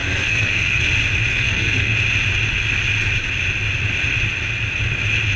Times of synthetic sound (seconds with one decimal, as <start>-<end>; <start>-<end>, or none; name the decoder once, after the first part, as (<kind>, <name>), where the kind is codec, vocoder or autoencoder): 0.0-0.8 (codec, SNAC); 1.3-1.9